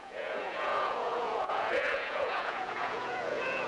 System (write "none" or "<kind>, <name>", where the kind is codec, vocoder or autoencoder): vocoder, Vocos